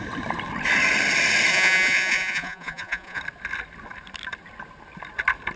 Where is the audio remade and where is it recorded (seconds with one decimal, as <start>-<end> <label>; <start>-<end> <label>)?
0.0-1.5 recorded; 1.5-3.2 remade; 3.2-5.6 recorded